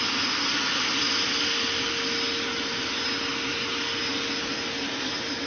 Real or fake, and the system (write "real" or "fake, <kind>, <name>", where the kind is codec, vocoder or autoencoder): real